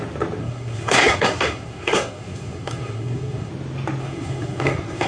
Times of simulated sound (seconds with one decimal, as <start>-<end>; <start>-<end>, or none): 0.4-3.5; 4.0-5.1